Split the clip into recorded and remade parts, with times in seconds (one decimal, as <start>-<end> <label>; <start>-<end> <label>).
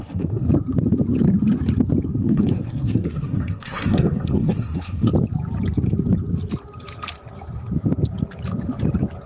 0.0-0.5 remade; 0.5-2.2 recorded; 2.2-5.1 remade; 5.1-9.3 recorded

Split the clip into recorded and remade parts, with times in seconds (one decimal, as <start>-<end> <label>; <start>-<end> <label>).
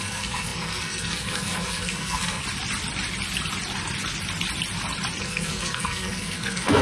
0.0-2.4 remade; 2.4-5.2 recorded; 5.2-6.8 remade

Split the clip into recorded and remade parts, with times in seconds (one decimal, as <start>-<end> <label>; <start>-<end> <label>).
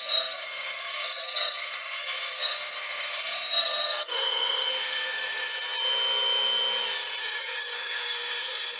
0.0-5.5 remade; 5.5-7.2 recorded; 7.2-8.8 remade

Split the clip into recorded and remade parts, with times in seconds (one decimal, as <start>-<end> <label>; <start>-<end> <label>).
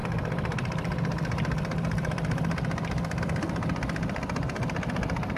0.0-5.4 recorded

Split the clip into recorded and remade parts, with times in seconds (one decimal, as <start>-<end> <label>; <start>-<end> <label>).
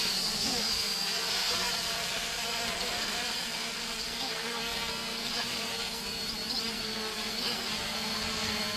0.0-6.2 remade; 6.2-6.7 recorded; 6.7-8.8 remade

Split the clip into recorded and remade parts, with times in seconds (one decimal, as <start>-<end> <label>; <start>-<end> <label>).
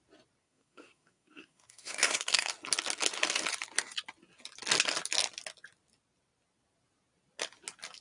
0.0-0.4 recorded; 0.4-2.5 remade; 2.5-8.0 recorded